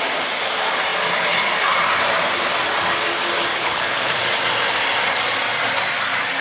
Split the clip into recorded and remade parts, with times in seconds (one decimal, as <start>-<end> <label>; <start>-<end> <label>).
0.0-3.5 recorded; 3.5-4.1 remade; 4.1-6.4 recorded